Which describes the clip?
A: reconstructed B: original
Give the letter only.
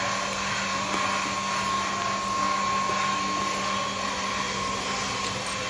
B